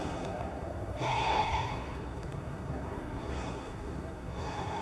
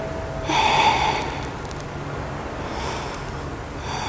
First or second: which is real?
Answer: second